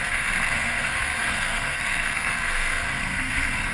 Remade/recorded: remade